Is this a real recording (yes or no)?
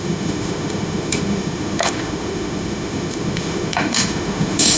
no